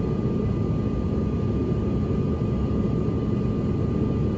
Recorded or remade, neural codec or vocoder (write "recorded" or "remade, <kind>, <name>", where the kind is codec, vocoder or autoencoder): recorded